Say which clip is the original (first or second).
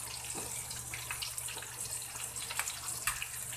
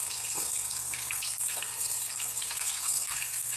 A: first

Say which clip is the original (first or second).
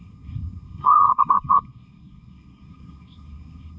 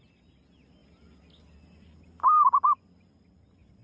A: second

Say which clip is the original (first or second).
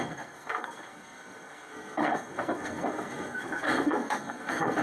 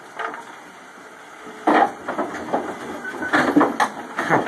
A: second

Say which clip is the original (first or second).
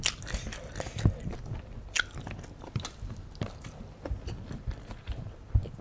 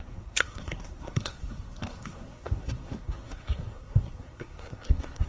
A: first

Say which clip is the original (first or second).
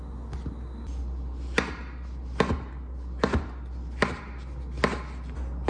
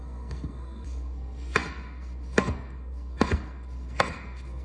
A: first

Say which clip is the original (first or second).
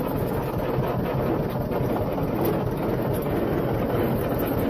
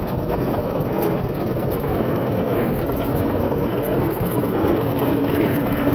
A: first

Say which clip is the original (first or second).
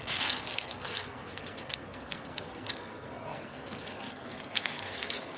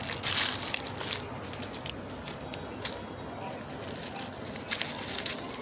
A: second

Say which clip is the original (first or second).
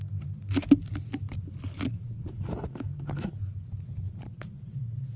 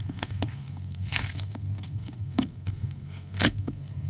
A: first